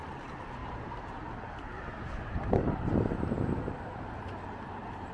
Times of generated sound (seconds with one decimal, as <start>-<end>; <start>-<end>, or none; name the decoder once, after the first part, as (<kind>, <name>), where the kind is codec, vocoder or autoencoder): 0.6-2.9 (vocoder, BigVGAN v2)